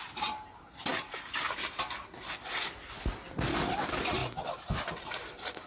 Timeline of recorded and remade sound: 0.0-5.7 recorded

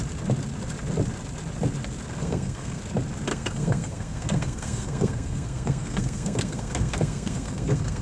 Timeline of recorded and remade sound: 0.0-2.2 recorded; 2.2-2.8 remade; 2.8-3.3 recorded; 3.3-8.0 remade

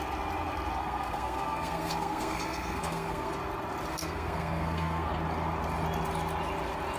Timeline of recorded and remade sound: 0.0-0.8 recorded; 0.8-3.3 remade; 3.3-3.9 recorded; 3.9-5.1 remade; 5.1-7.0 recorded

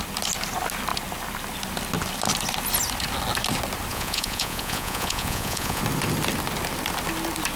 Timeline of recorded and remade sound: 0.0-3.9 recorded; 3.9-5.8 remade; 5.8-7.6 recorded